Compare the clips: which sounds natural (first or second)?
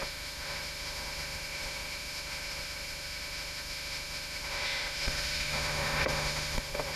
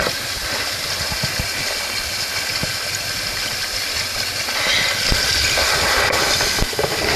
second